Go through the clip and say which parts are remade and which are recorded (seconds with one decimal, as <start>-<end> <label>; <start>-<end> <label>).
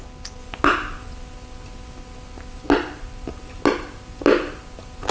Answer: 0.0-5.1 recorded